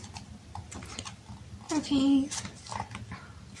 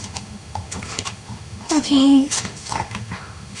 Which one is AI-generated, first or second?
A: second